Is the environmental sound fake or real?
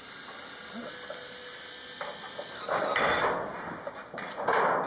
real